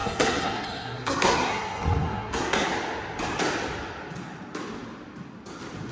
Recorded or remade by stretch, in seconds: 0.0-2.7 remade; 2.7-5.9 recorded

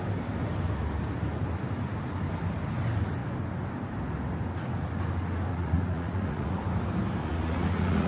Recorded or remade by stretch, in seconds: 0.0-5.5 recorded; 5.5-6.6 remade; 6.6-7.2 recorded; 7.2-8.1 remade

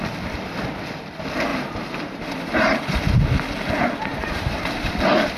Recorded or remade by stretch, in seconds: 0.0-1.5 recorded; 1.5-3.1 remade; 3.1-4.1 recorded; 4.1-4.9 remade; 4.9-5.4 recorded

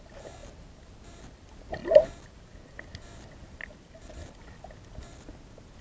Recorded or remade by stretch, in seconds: 0.0-5.8 recorded